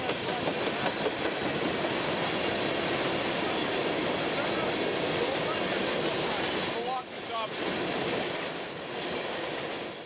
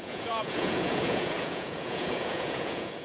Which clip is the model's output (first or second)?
second